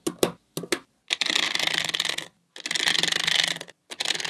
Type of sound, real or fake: real